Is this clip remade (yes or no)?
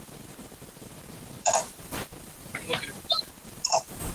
yes